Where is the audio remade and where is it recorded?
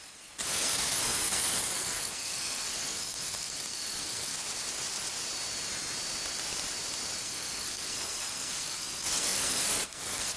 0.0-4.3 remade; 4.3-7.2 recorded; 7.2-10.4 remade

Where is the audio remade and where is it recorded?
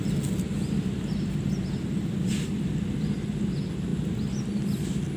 0.0-5.2 recorded